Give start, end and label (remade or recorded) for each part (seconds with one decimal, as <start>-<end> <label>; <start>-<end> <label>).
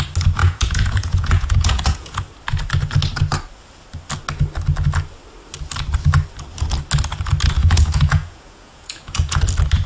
0.0-0.4 recorded; 0.4-2.2 remade; 2.2-7.6 recorded; 7.6-9.4 remade; 9.4-9.9 recorded